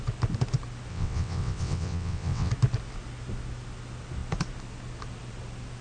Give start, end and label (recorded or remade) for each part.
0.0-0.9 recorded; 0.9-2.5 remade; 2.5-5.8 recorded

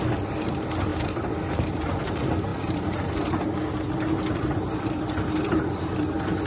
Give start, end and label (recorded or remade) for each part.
0.0-6.5 remade

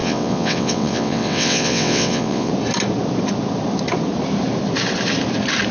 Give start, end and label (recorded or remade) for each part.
0.0-2.5 remade; 2.5-5.7 recorded

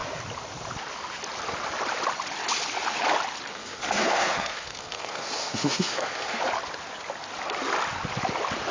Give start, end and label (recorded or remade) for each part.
0.0-3.5 recorded; 3.5-6.4 remade; 6.4-8.7 recorded

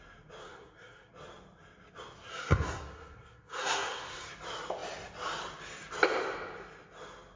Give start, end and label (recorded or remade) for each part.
0.0-0.4 recorded; 0.4-1.1 remade; 1.1-2.3 recorded; 2.3-4.3 remade; 4.3-7.4 recorded